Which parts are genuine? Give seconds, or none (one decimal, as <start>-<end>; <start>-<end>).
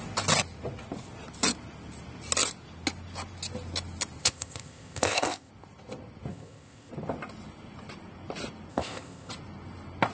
0.0-4.2; 5.5-6.3; 6.9-8.7; 9.3-10.1